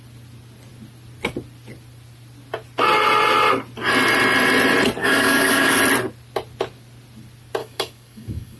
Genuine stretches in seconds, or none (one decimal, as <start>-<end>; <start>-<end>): 0.0-5.0; 5.8-7.6